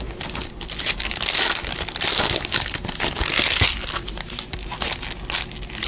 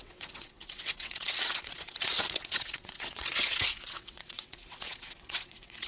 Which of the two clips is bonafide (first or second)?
first